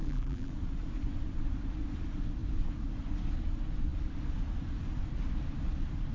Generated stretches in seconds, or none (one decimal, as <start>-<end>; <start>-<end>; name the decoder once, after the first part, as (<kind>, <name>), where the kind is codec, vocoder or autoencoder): 0.0-0.5 (vocoder, BigVGAN v2)